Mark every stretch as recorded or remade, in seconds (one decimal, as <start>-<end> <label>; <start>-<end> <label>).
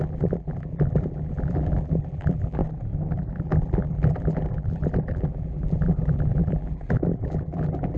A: 0.0-2.6 remade; 2.6-3.1 recorded; 3.1-8.0 remade